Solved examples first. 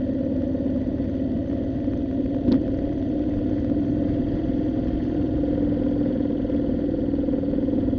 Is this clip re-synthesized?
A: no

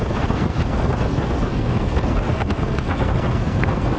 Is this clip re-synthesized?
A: yes